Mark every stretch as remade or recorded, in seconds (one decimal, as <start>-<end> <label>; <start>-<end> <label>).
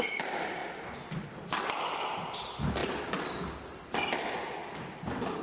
0.0-5.4 recorded